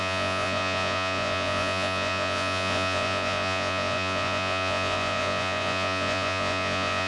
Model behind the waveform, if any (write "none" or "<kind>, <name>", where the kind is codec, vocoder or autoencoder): vocoder, Vocos